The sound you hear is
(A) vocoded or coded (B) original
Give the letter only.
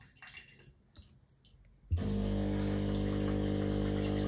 B